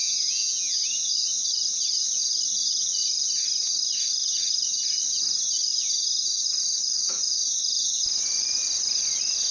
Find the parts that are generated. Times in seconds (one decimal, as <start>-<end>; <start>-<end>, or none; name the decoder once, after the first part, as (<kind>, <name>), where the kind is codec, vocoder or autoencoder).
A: 0.0-0.8 (vocoder, Vocos)